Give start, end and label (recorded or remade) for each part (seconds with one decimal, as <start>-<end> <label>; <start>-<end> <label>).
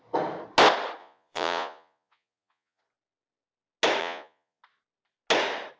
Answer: 0.0-1.0 recorded; 1.0-2.8 remade; 2.8-4.0 recorded; 4.0-4.6 remade; 4.6-5.8 recorded